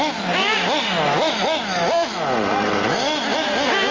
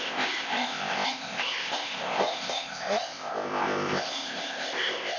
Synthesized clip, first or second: second